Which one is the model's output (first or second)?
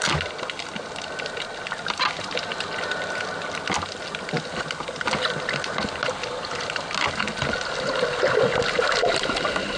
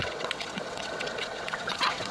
second